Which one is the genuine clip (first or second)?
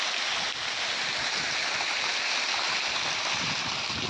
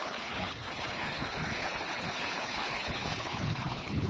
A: first